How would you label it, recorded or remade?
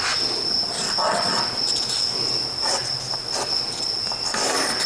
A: recorded